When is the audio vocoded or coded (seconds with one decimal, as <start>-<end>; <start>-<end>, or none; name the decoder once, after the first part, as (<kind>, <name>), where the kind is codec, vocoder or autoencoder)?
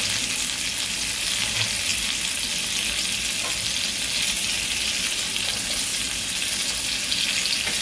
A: none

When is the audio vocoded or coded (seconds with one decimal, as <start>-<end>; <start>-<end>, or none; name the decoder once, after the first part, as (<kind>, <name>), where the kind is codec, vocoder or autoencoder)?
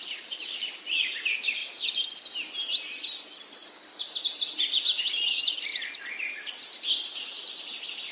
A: none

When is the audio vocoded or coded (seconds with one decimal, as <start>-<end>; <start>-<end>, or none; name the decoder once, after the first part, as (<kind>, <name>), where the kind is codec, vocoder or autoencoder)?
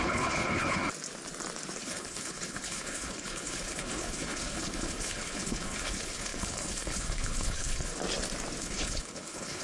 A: 0.0-0.8 (codec, HILCodec); 1.8-7.9; 8.6-9.6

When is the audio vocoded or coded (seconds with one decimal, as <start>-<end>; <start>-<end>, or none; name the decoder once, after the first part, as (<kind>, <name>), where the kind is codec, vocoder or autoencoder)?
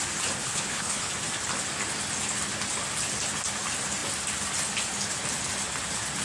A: 0.4-1.1 (codec, HILCodec)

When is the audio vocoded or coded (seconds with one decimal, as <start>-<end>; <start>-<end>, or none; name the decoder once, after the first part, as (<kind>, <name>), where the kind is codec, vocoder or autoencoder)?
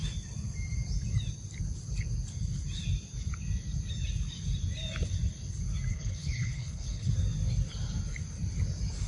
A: 5.9-7.1 (codec, HILCodec)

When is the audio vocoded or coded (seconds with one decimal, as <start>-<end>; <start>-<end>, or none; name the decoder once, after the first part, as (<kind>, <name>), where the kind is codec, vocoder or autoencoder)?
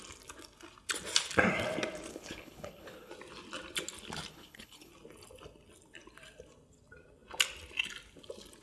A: 2.1-3.1 (codec, HILCodec); 4.3-4.9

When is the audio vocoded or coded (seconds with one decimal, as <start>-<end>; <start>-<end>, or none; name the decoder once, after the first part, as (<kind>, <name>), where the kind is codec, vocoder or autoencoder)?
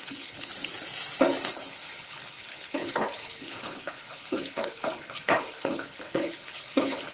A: 0.0-0.5 (codec, HILCodec); 1.5-7.1